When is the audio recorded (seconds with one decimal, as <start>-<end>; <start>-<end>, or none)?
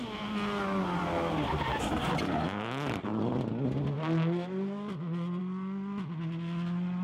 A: 0.0-7.0